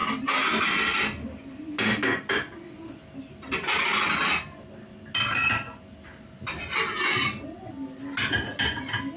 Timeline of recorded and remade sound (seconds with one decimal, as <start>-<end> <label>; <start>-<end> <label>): 0.0-9.2 recorded